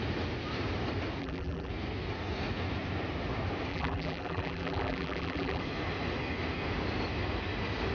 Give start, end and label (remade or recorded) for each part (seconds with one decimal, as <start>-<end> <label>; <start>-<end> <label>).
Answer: 0.0-1.2 recorded; 1.2-1.7 remade; 1.7-3.7 recorded; 3.7-5.6 remade; 5.6-7.9 recorded